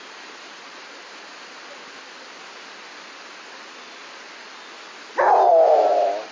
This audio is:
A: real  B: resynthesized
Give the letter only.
A